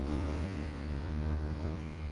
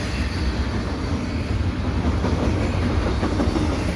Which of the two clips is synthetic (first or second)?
first